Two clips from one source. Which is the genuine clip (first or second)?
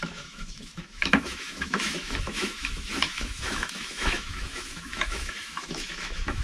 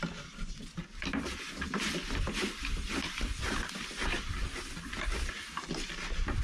second